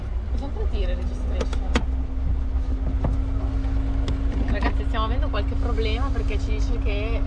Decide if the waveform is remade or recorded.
recorded